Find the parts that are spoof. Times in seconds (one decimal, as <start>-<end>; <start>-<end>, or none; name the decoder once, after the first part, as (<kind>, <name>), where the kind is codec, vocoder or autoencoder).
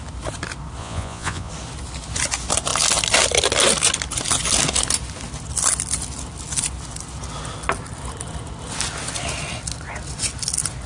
0.8-1.5 (vocoder, Vocos)